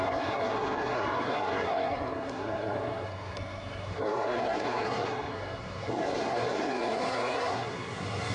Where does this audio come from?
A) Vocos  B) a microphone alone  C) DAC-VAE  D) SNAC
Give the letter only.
D